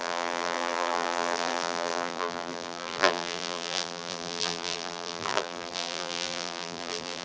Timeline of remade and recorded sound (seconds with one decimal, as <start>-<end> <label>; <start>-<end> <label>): 0.0-7.2 remade